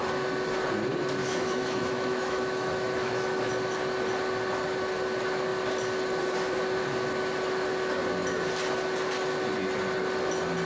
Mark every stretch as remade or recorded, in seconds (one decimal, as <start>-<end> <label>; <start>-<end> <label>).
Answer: 0.0-1.2 recorded; 1.2-3.5 remade; 3.5-10.6 recorded